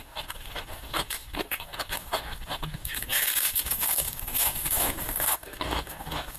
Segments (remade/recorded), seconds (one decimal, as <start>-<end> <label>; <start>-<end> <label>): 0.0-6.4 remade